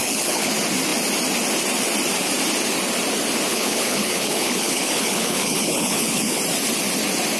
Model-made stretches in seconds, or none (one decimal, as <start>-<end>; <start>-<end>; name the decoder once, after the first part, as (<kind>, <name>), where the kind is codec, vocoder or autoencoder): 0.0-0.5 (codec, HILCodec); 3.5-6.4